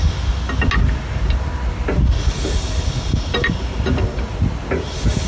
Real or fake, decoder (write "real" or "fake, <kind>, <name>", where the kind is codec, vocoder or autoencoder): real